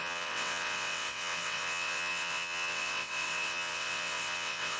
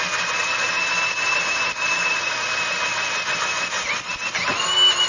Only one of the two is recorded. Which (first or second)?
second